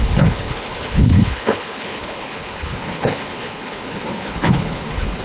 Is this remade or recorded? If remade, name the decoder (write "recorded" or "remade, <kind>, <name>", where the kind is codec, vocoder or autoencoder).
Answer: remade, codec, HILCodec